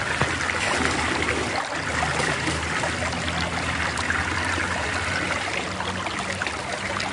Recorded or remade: recorded